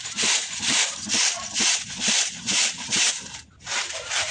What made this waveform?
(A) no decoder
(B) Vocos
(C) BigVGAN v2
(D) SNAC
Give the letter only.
C